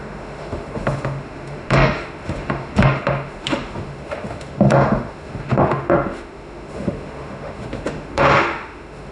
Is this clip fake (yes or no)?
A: yes